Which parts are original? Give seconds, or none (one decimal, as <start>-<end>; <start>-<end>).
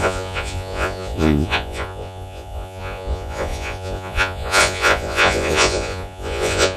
none